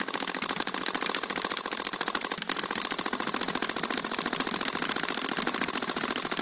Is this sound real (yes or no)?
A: no